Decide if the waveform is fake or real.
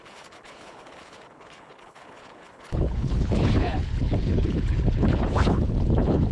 fake